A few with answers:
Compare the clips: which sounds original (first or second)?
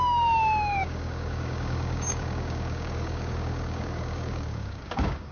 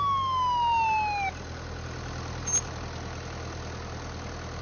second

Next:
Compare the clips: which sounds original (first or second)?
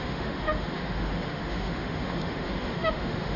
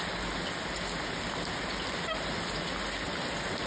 second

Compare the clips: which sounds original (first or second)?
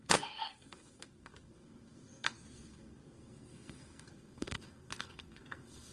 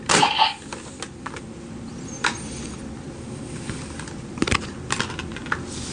second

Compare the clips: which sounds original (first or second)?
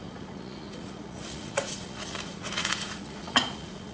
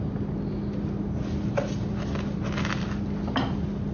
second